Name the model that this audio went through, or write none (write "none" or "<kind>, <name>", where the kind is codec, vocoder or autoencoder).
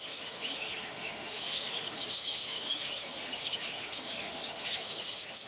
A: autoencoder, DAC-VAE